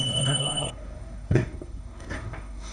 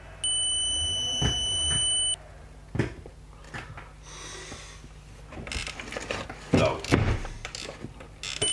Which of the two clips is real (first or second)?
second